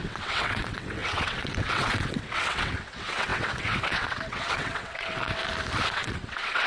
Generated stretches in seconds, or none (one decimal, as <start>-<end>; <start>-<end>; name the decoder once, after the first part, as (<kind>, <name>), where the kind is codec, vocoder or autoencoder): 0.0-5.4 (vocoder, WaveNeXt); 5.9-6.7